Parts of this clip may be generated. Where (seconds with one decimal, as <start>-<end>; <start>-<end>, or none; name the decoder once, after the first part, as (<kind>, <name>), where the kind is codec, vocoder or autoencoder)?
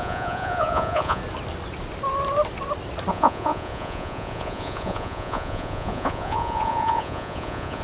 0.0-1.2 (vocoder, Vocos); 3.1-7.8